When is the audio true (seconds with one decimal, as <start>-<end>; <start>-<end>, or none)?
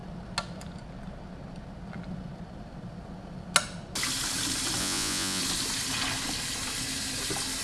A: 0.0-4.8; 5.4-7.6